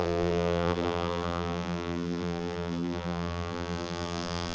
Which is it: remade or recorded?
remade